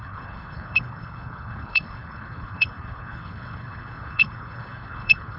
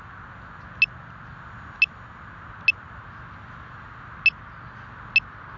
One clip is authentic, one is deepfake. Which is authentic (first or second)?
second